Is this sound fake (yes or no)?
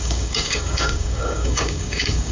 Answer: yes